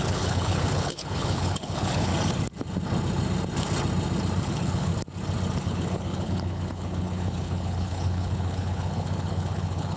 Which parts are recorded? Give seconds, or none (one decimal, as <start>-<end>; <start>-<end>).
2.1-4.4; 4.9-5.6